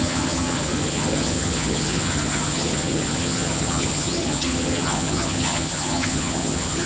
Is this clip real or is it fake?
fake